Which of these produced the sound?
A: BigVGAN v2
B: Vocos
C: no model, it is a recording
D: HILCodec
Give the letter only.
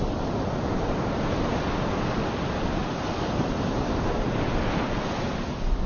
C